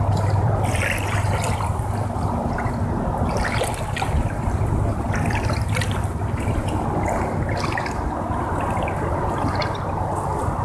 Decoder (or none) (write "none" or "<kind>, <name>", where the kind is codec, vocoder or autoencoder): none